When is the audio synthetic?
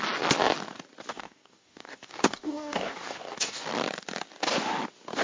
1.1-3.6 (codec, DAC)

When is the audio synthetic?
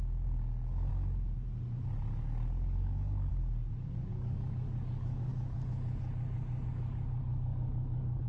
0.0-0.9 (codec, DAC); 2.0-3.3; 4.1-5.3; 6.7-8.3